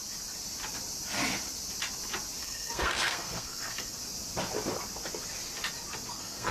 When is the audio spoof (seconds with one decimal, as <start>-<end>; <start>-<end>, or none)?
2.4-4.0; 6.1-6.5